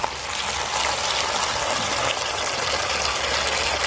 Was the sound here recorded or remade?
recorded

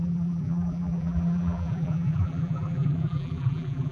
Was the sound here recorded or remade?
remade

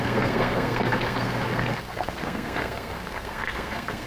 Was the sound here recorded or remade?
remade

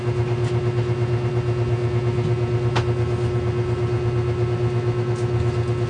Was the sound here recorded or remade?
recorded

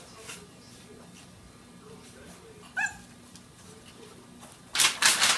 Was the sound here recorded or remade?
recorded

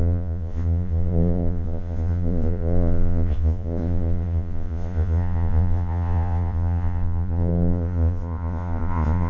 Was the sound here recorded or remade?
remade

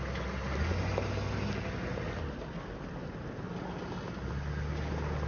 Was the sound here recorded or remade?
recorded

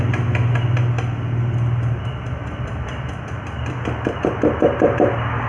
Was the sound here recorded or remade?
recorded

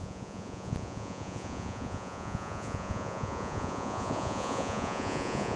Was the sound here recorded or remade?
remade